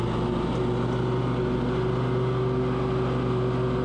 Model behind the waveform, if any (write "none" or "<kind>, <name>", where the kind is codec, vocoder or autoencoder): none